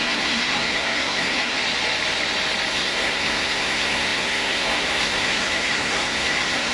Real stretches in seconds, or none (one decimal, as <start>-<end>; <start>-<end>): 1.6-2.7